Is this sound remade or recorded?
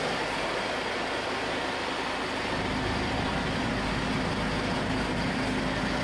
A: recorded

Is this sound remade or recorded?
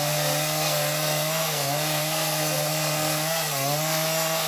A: remade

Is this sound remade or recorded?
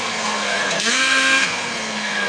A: remade